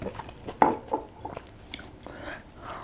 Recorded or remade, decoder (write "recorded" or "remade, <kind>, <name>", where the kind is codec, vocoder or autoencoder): recorded